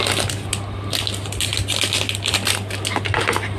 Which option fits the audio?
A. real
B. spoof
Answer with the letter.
A